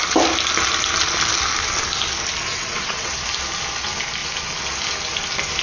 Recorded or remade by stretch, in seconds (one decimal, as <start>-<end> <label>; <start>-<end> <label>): 0.0-2.5 recorded; 2.5-3.1 remade; 3.1-5.6 recorded